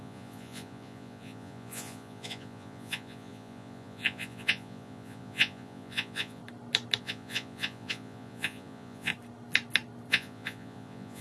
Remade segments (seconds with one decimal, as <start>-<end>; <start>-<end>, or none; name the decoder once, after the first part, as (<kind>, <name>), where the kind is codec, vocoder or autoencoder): 0.0-6.4 (vocoder, Vocos); 7.0-9.1; 10.1-11.2